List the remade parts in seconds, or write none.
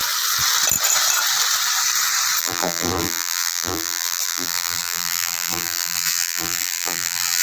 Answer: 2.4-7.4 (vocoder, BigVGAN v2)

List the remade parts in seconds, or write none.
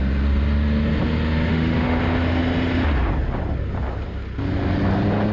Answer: 1.5-2.0 (autoencoder, DAC-VAE)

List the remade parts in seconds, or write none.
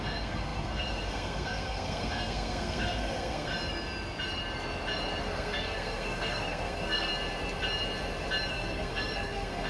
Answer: 0.0-3.5 (codec, SNAC); 5.2-7.1; 8.5-9.7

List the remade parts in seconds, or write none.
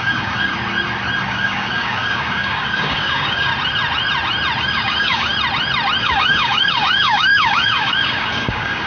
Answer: 0.0-0.5 (codec, DAC); 1.3-3.5; 4.6-5.3; 6.0-8.9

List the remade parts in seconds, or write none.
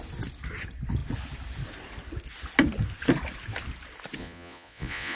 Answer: 4.2-5.2 (vocoder, Vocos)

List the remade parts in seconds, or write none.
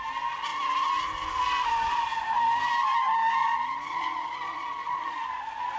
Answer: 3.4-5.2 (vocoder, Vocos)